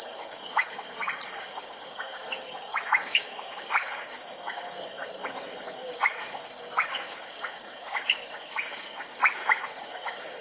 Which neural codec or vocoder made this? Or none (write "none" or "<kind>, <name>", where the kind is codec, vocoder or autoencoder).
codec, DAC